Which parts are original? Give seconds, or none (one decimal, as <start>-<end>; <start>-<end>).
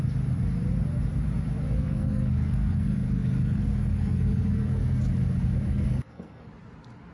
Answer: 0.0-1.8; 5.0-5.7; 6.5-7.1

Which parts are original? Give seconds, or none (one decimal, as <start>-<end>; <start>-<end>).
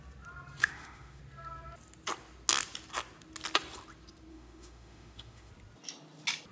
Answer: 0.0-0.6; 1.2-4.3; 5.5-6.5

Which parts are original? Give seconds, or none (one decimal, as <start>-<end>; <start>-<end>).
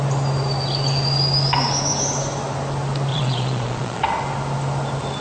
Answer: 0.0-3.1; 4.0-5.2